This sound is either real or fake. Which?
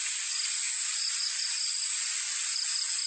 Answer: real